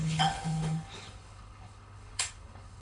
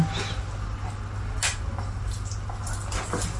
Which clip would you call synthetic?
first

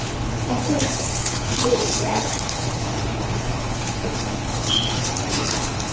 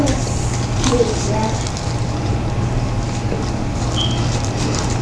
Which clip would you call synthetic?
first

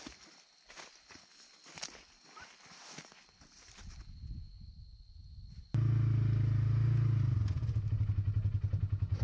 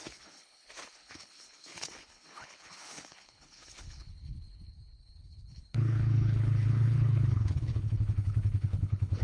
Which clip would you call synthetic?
second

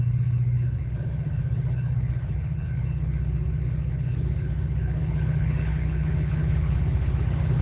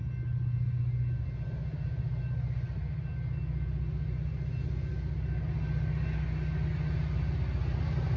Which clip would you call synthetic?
first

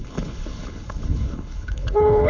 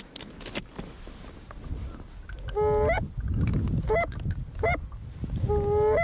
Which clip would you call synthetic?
first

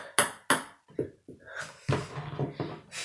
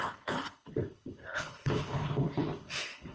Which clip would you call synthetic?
second